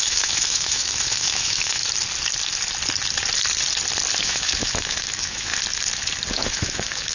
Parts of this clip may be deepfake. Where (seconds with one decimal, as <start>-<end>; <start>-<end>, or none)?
0.0-1.8; 4.2-5.5; 6.3-7.1